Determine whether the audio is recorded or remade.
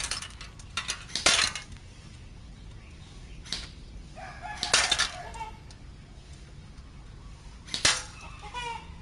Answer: recorded